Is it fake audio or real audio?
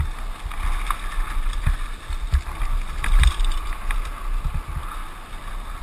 real